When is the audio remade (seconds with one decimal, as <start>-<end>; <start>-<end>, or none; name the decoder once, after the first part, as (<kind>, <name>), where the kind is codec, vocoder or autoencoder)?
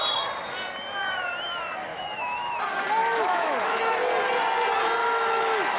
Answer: 1.9-2.6 (autoencoder, DAC-VAE); 3.0-3.8; 5.0-5.8